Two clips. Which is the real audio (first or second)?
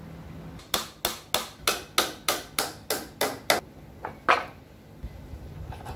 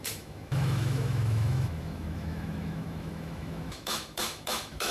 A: first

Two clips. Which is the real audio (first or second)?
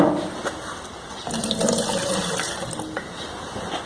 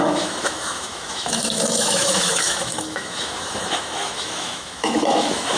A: first